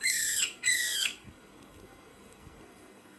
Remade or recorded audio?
remade